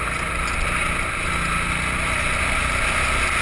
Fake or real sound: real